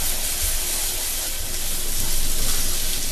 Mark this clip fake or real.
real